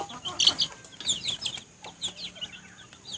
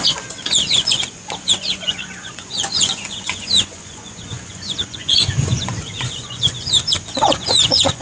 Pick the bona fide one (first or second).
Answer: first